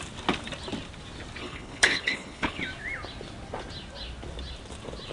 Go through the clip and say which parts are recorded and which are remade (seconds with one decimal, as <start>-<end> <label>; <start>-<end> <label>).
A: 0.0-1.4 recorded; 1.4-2.6 remade; 2.6-5.1 recorded